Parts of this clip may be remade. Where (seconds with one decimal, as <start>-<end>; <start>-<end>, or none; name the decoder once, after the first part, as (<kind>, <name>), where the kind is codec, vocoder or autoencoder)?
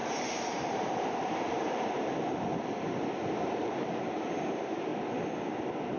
0.0-2.5 (vocoder, BigVGAN v2); 3.4-4.9